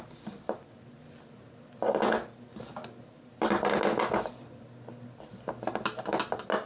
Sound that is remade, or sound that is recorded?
recorded